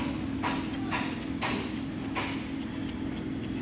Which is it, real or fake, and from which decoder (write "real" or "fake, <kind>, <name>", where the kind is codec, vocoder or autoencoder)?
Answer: real